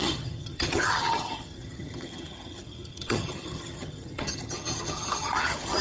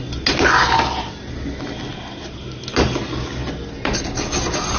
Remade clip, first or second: first